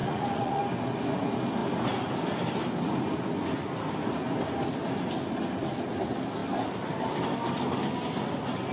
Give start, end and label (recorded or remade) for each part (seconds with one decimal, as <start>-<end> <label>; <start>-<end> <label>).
0.0-0.6 remade; 0.6-8.7 recorded